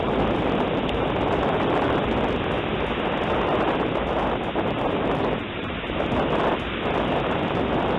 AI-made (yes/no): no